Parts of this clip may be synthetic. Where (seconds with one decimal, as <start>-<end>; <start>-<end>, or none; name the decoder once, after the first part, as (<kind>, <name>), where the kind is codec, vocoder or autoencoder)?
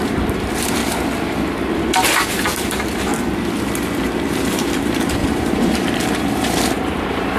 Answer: 0.0-0.8 (vocoder, BigVGAN v2); 2.3-3.1; 4.0-7.4